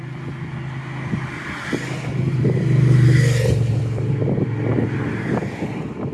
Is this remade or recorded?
recorded